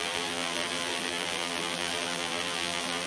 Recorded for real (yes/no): no